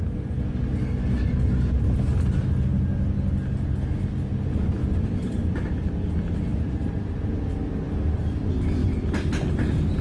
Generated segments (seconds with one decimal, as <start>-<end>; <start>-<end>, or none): 4.8-5.4; 6.5-7.2